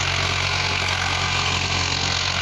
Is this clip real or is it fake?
fake